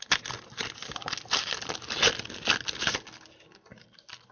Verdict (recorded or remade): recorded